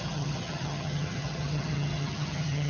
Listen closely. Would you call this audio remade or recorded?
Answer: remade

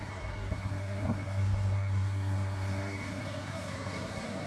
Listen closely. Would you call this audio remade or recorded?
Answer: remade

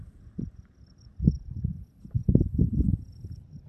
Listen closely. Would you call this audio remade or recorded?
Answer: recorded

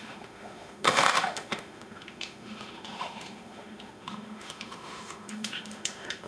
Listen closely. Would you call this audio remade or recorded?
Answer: remade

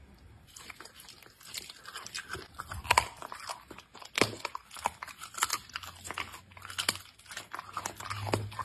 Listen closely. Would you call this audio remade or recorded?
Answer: recorded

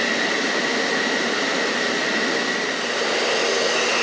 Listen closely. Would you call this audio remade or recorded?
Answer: recorded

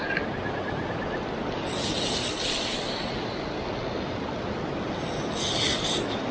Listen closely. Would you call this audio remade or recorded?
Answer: recorded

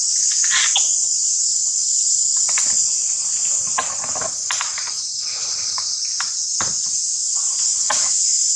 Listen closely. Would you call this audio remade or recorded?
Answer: recorded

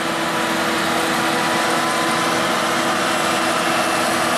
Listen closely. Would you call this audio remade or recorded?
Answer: recorded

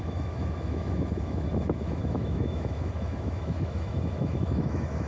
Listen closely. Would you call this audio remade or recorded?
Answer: remade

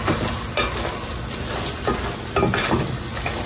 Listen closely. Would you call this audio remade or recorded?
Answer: recorded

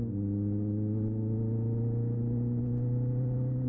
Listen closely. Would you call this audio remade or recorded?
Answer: recorded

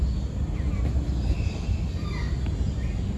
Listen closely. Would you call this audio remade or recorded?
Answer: recorded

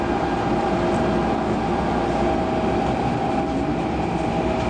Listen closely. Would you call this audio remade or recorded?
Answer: recorded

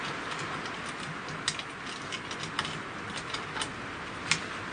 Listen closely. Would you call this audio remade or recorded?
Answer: recorded